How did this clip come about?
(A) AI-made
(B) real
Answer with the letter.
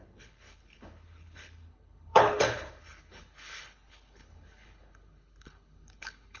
A